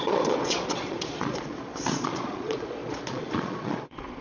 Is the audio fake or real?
fake